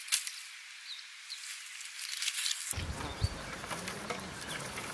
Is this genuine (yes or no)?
yes